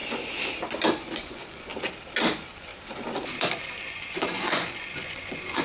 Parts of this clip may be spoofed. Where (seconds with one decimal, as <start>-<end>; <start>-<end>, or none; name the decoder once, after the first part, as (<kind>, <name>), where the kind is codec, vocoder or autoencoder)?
0.9-1.7 (vocoder, Vocos); 2.3-2.7; 3.5-5.6